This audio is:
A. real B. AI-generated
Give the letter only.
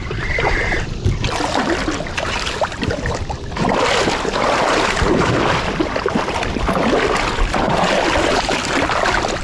B